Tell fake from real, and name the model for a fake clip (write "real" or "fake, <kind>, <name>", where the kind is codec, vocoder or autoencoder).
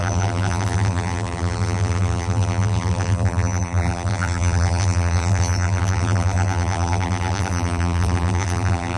fake, vocoder, BigVGAN v2